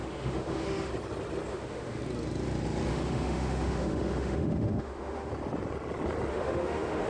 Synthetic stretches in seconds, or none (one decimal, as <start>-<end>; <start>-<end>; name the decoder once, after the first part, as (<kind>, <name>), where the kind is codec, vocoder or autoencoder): 0.0-0.9 (autoencoder, DAC-VAE); 1.5-2.0; 2.9-5.3; 6.3-7.1